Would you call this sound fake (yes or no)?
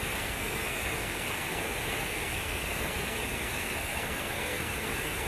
yes